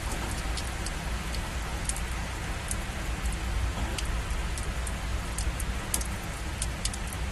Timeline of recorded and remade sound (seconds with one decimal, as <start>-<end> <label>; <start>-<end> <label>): 0.0-7.3 recorded